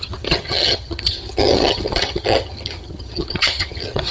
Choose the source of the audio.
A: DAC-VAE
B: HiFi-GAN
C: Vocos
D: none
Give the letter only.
B